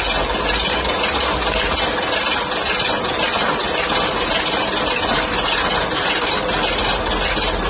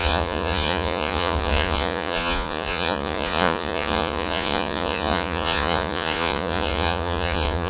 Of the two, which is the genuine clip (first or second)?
first